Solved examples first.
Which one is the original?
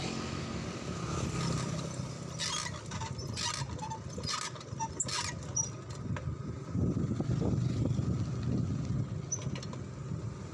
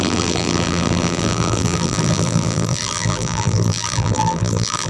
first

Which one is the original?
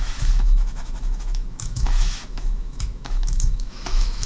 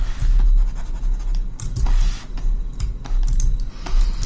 second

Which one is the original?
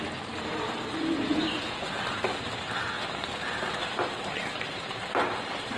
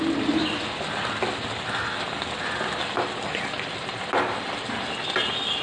second